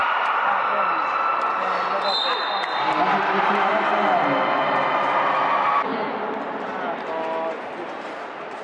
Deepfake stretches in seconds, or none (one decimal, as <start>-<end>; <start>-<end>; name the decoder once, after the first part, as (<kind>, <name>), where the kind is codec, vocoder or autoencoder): 3.1-3.9 (vocoder, BigVGAN v2); 7.8-8.6